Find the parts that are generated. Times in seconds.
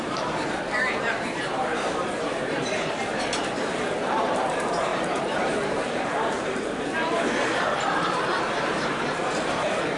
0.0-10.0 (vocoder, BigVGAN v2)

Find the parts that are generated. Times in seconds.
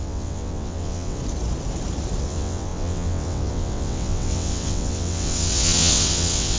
0.0-1.2 (vocoder, WaveNeXt); 2.2-6.6